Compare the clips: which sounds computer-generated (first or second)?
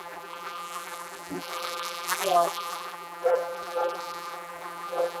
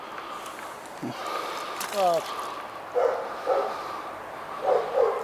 first